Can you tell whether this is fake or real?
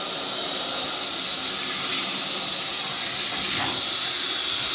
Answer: real